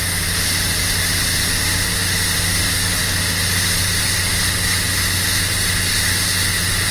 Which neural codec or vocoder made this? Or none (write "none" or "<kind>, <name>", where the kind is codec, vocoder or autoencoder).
none